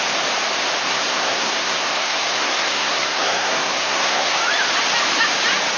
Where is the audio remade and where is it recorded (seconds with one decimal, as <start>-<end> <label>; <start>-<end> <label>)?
0.0-0.8 recorded; 0.8-4.3 remade; 4.3-5.8 recorded